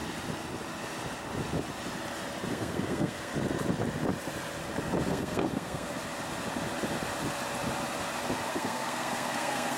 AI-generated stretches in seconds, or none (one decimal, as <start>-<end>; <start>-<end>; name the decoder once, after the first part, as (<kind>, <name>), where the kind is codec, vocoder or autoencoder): 2.5-3.3 (codec, SNAC); 5.1-6.0; 8.5-9.8